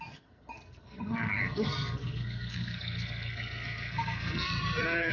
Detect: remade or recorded remade